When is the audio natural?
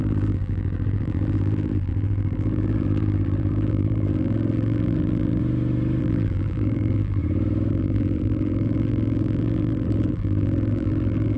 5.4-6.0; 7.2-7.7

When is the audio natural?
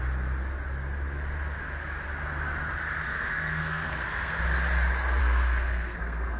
0.0-3.1; 4.4-5.2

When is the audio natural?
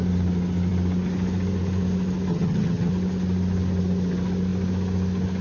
0.0-2.3; 2.9-5.4